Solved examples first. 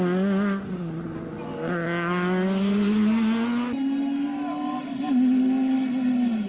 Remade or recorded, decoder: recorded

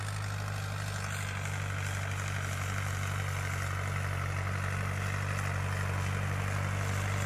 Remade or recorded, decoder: recorded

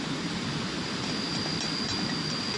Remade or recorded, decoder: recorded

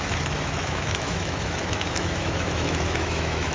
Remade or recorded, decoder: remade, autoencoder, DAC-VAE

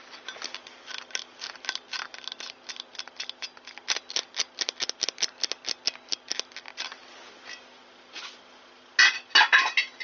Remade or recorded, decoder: recorded